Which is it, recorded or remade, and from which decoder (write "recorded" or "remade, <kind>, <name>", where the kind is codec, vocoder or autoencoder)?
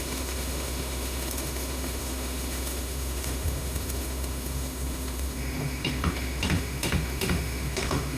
remade, autoencoder, DAC-VAE